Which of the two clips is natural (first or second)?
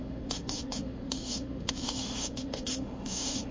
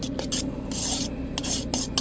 second